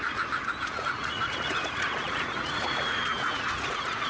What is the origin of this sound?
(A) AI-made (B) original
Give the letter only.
A